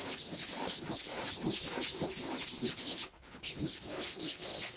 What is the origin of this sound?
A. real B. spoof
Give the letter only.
B